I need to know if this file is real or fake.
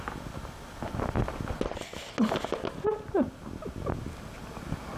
real